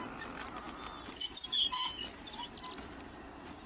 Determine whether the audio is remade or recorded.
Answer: recorded